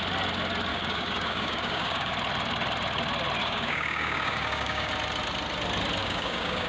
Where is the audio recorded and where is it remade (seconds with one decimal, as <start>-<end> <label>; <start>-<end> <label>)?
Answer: 0.0-0.7 recorded; 0.7-2.1 remade; 2.1-3.4 recorded; 3.4-4.9 remade; 4.9-6.0 recorded; 6.0-6.7 remade